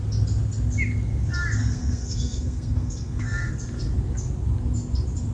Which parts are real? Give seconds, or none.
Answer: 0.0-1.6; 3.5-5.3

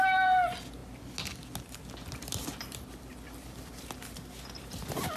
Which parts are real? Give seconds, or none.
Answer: 0.0-5.2

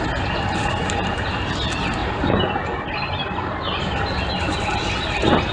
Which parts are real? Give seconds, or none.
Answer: 0.0-5.5

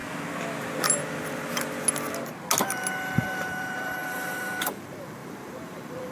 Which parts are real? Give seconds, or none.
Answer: 0.0-2.9

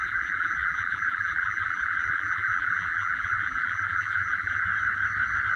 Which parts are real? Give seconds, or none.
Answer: 4.7-5.6